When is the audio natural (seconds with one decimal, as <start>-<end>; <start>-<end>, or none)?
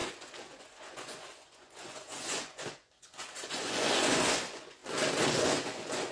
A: 4.8-5.3